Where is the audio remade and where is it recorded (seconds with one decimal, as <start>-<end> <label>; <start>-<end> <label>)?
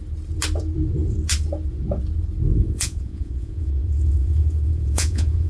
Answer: 0.0-2.5 recorded; 2.5-5.5 remade